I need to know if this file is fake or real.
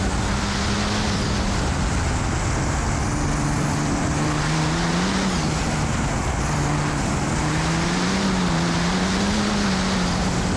real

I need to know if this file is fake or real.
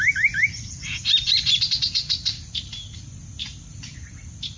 fake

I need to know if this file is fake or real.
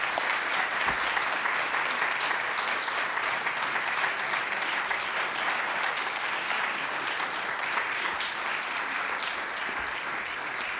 real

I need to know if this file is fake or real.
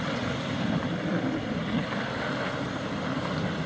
real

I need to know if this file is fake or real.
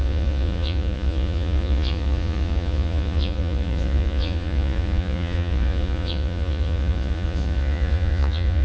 fake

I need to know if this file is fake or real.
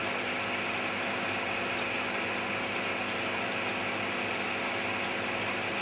real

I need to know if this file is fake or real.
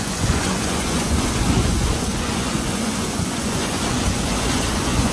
fake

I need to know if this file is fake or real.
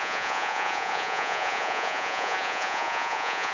fake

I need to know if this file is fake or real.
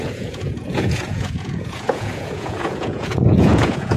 fake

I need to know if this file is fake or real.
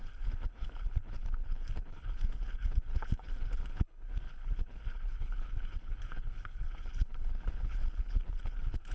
fake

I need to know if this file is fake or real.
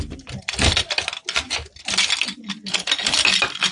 real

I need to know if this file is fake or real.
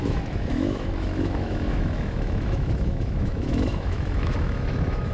fake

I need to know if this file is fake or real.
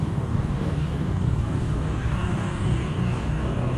fake